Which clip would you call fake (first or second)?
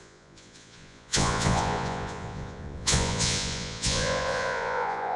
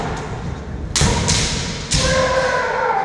first